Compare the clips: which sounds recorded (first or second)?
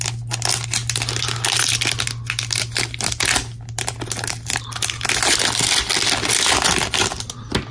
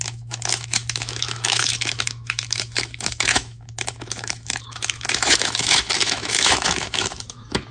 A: first